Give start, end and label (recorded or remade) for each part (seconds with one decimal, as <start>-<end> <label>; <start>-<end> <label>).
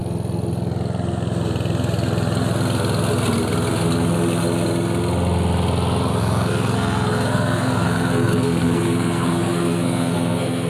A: 0.0-6.1 recorded; 6.1-10.7 remade